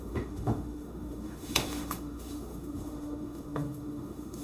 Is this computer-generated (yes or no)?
yes